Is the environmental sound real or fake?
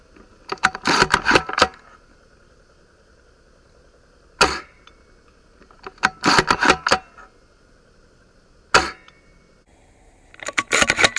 real